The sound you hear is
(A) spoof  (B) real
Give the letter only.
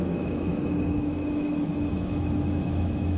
A